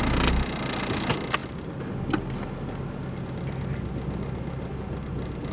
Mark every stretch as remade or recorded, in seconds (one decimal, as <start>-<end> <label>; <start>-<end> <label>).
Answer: 0.0-5.5 recorded